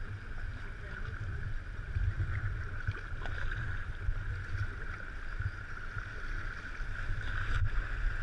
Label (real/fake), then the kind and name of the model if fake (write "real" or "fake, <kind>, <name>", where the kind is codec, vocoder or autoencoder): real